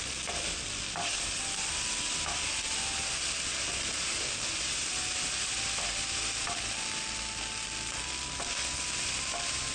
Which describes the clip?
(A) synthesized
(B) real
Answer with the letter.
B